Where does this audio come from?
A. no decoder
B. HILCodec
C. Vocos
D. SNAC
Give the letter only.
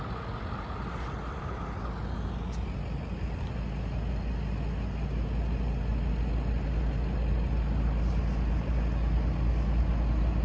A